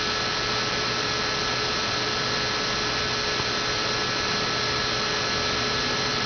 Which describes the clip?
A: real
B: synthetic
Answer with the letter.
A